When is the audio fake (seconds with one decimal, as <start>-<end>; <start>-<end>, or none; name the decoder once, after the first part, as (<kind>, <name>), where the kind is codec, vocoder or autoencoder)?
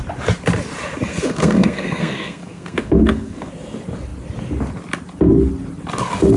1.1-3.5 (codec, SNAC)